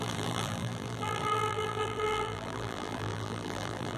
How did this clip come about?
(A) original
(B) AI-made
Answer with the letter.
B